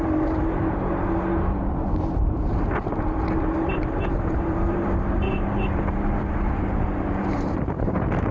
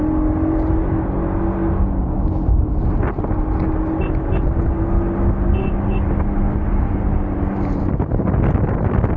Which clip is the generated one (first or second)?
first